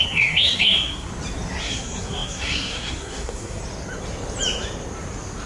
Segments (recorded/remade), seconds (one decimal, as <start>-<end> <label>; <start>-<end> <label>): 0.0-1.1 remade; 1.1-1.6 recorded; 1.6-3.6 remade; 3.6-5.5 recorded